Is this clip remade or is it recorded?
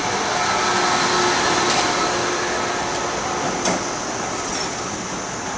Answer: recorded